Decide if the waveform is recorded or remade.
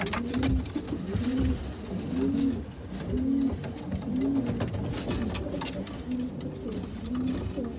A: recorded